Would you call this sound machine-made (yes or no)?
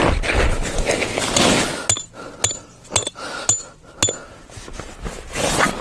no